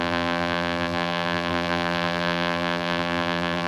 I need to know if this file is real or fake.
fake